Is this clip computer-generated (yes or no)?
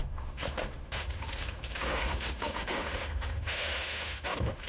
yes